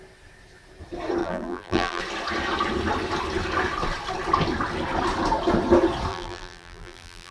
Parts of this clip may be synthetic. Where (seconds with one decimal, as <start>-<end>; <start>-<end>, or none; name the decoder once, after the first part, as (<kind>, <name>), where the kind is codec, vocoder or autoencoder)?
1.2-2.0 (vocoder, BigVGAN v2); 6.1-7.3